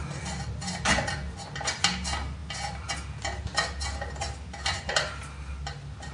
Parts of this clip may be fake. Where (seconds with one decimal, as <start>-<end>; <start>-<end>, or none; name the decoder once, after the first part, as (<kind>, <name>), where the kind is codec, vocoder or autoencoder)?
none